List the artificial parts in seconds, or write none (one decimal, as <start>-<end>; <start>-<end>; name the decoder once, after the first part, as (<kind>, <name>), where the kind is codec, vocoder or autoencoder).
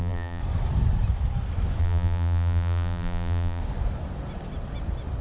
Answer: 0.0-0.4 (vocoder, BigVGAN v2); 1.8-3.6